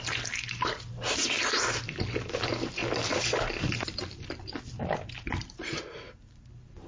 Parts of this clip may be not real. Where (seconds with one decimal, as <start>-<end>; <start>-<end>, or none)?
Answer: none

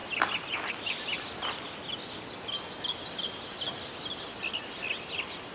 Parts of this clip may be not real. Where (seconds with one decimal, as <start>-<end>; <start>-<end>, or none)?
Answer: none

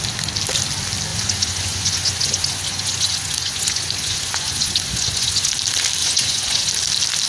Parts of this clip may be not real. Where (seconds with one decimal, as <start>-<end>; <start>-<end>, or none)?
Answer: 1.1-5.5; 6.0-6.7

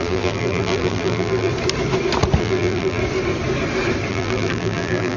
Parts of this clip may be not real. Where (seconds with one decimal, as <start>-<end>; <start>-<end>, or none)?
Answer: 0.0-1.5; 2.4-3.0; 4.1-5.2

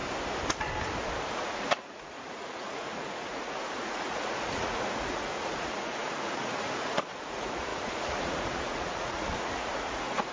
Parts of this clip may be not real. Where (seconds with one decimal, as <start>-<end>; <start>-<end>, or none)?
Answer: 1.3-10.3

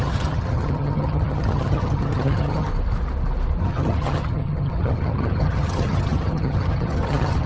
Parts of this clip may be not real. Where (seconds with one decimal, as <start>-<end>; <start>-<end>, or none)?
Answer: 0.0-2.7; 3.6-7.5

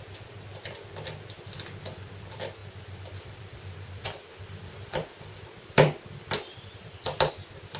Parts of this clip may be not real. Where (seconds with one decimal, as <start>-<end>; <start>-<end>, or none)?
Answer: 2.6-7.3